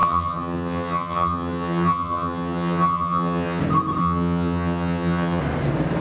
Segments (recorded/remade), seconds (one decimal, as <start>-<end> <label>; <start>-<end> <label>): 0.0-3.6 remade; 3.6-4.0 recorded; 4.0-5.4 remade; 5.4-6.0 recorded